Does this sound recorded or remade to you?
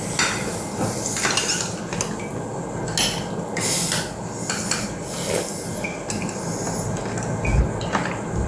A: recorded